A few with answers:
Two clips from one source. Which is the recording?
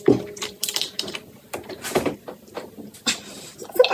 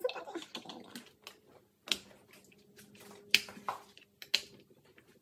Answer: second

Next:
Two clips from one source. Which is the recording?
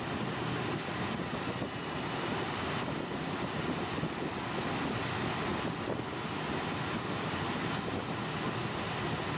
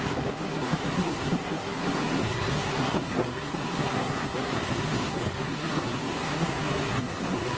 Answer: first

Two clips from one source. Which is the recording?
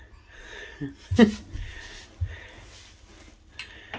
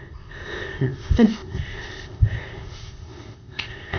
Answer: first